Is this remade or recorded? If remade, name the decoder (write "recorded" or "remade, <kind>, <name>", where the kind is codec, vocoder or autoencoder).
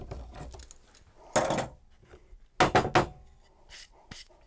recorded